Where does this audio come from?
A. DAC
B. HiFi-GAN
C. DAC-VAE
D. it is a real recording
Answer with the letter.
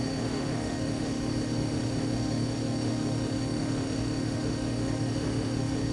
C